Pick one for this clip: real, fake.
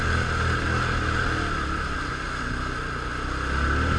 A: real